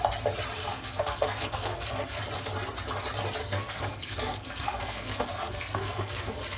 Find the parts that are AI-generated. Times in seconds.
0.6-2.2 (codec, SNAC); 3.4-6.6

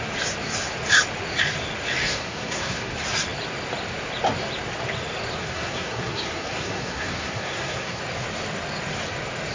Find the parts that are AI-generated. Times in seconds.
2.0-2.9 (codec, SNAC); 5.4-8.0